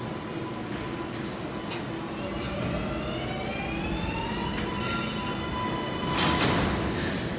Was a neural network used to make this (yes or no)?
no